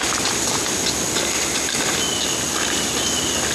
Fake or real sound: real